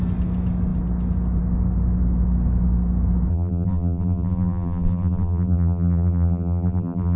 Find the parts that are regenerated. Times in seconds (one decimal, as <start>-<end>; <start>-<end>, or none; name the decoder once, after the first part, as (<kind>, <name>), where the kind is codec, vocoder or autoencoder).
3.3-7.2 (vocoder, BigVGAN v2)